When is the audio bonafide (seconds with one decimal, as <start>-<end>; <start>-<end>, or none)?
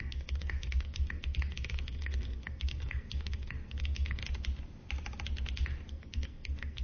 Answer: 4.2-5.9